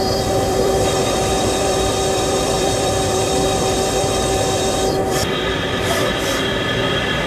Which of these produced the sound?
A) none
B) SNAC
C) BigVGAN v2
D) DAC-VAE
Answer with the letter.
C